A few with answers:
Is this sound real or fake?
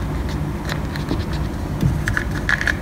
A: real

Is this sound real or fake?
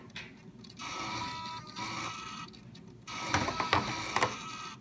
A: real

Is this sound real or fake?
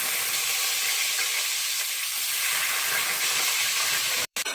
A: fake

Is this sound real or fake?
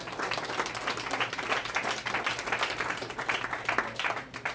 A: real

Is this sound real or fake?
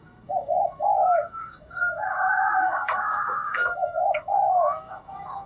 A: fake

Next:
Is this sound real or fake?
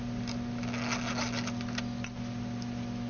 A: real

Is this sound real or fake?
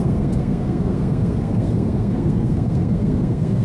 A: fake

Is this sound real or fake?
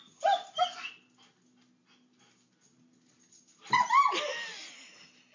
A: real